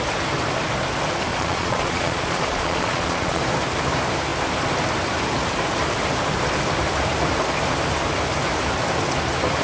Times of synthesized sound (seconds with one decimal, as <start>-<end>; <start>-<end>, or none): 1.3-3.4